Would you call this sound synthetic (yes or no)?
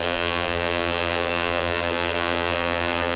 yes